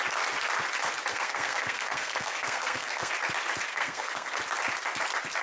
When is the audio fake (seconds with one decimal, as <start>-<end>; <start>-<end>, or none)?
1.1-3.1; 3.7-4.4